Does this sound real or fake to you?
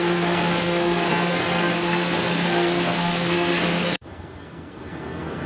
fake